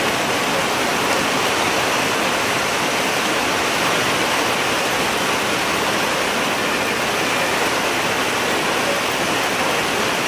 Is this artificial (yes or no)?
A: no